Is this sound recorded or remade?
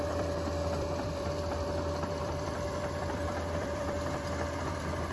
remade